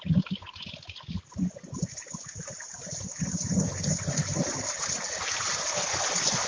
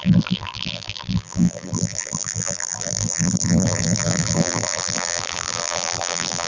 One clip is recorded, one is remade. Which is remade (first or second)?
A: second